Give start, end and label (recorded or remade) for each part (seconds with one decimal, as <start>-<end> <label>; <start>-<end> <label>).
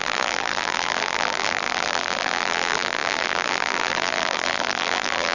0.0-5.3 remade